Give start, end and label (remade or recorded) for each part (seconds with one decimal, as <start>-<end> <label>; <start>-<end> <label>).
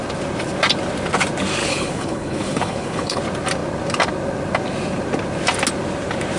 0.0-1.6 recorded; 1.6-3.2 remade; 3.2-6.4 recorded